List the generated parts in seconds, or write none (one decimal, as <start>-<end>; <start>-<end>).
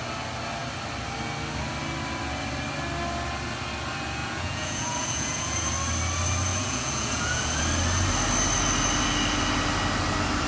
4.2-5.7; 6.5-7.6